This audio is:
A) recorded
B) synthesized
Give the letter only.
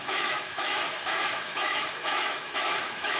B